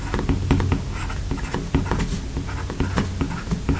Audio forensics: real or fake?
real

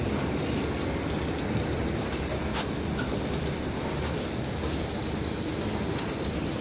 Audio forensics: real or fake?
real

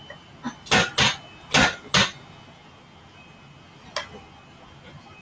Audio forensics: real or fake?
real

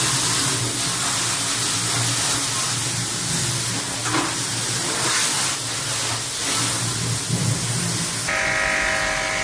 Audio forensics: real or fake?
real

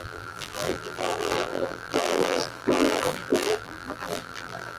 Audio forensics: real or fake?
fake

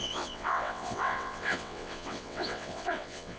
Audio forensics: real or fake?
fake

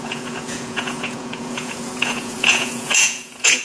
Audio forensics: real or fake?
fake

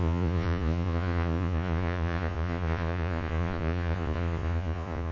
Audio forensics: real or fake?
fake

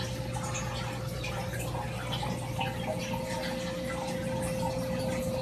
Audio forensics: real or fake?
real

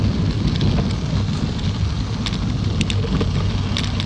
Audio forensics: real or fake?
real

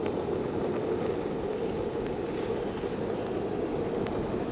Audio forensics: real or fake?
real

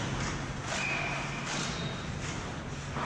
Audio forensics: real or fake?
real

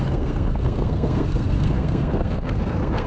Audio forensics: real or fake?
fake